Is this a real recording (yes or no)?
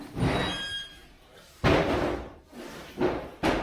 yes